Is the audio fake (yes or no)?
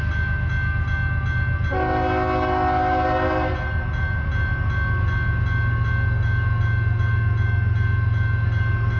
no